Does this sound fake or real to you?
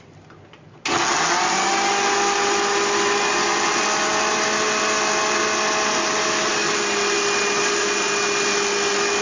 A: real